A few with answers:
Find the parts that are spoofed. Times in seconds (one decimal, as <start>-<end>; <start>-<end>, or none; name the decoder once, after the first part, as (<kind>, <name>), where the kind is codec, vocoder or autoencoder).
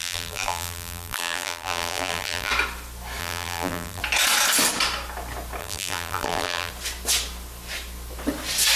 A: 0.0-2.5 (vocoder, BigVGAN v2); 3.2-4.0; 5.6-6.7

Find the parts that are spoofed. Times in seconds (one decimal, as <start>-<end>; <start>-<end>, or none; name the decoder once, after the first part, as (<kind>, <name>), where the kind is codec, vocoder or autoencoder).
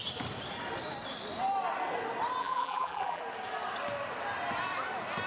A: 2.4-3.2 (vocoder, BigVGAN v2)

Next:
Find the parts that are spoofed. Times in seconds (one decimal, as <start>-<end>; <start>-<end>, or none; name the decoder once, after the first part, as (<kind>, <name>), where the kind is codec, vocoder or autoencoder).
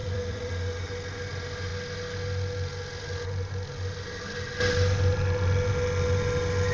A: 0.0-0.5 (vocoder, BigVGAN v2)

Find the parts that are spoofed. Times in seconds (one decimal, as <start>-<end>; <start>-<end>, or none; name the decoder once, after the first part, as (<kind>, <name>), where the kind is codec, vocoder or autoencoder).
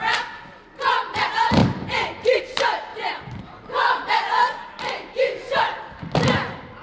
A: 1.6-2.4 (vocoder, BigVGAN v2); 2.9-5.8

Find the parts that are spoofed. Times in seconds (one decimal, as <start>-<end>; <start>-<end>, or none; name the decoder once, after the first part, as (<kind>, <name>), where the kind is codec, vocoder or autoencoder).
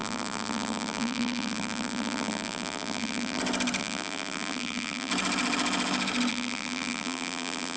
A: 0.0-3.4 (vocoder, BigVGAN v2); 3.8-5.1; 6.3-7.8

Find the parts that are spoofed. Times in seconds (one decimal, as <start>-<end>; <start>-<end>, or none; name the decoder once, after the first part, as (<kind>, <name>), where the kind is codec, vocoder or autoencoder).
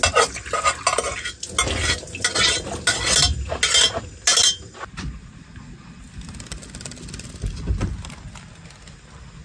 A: none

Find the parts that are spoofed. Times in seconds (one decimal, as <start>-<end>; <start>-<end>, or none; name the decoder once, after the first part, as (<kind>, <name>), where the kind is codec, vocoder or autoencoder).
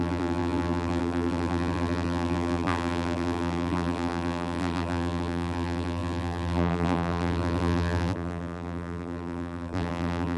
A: 0.0-10.4 (vocoder, BigVGAN v2)